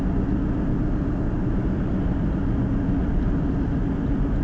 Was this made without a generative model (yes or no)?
yes